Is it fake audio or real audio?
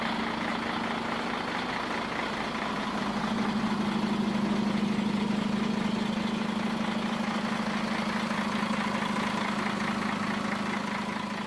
real